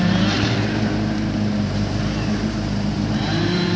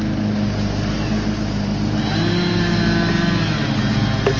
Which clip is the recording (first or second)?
second